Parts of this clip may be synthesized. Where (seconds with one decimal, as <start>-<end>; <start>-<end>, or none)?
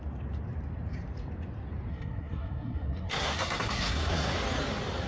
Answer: 1.9-4.3